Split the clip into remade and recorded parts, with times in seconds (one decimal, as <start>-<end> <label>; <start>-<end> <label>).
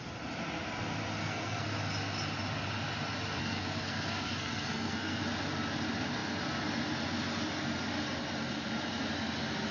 0.0-1.2 recorded; 1.2-1.7 remade; 1.7-3.4 recorded; 3.4-5.2 remade; 5.2-9.7 recorded